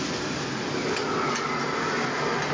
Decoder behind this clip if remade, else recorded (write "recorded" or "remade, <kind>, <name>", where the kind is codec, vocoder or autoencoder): recorded